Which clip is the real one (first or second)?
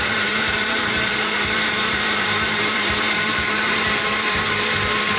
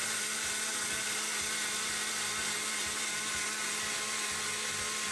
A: second